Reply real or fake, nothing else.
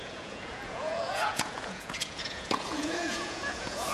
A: fake